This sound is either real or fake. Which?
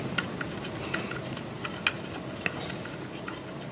real